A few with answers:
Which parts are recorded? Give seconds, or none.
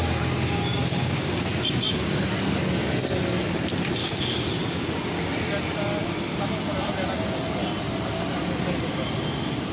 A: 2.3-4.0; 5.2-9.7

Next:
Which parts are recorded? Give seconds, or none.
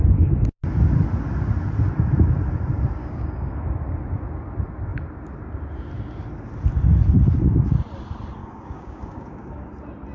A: 0.0-3.0; 3.6-8.4; 9.5-10.1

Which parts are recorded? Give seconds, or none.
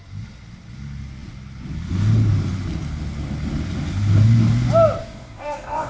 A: 0.0-5.0